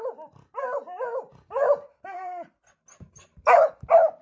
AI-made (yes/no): no